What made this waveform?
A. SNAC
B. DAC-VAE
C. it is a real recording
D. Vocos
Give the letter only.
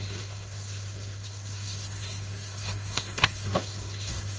A